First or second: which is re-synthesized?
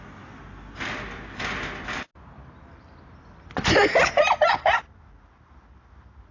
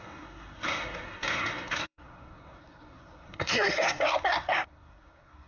second